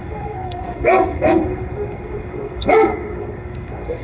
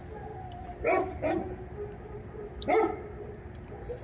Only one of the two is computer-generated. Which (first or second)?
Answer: first